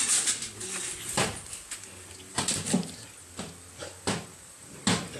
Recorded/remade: recorded